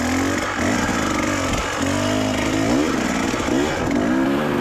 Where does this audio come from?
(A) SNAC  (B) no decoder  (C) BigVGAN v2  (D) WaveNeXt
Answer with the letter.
B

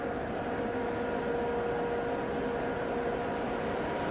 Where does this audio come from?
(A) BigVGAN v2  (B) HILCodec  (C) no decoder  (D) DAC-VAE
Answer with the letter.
C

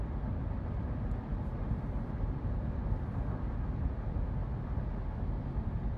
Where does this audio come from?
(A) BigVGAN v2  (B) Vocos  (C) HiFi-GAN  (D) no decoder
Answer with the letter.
D